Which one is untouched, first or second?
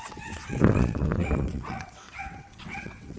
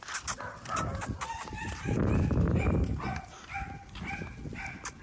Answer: second